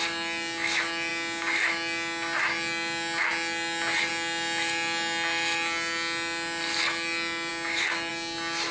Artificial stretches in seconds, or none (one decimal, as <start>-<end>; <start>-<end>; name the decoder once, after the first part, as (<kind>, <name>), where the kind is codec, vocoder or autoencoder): none